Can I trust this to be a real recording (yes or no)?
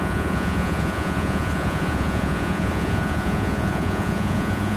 no